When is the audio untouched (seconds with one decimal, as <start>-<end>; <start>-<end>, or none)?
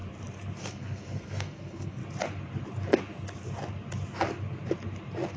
0.0-0.6; 2.0-5.4